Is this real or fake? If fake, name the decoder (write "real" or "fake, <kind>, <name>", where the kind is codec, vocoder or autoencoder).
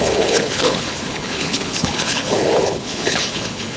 fake, codec, HILCodec